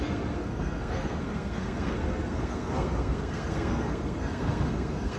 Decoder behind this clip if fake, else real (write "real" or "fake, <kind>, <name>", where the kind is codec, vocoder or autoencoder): fake, codec, SNAC